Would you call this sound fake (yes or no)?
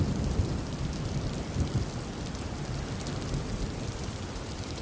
yes